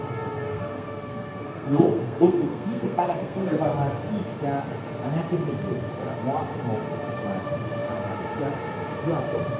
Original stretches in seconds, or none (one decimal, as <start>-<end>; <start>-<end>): 0.0-0.5; 3.6-9.6